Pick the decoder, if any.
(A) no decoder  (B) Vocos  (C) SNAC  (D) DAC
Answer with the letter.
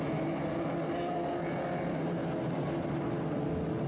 A